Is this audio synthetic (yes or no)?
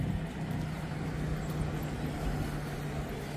no